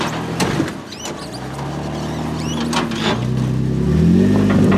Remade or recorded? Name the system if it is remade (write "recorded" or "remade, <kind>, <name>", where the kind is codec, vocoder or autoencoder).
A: recorded